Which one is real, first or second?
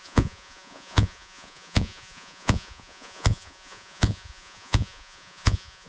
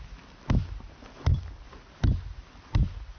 second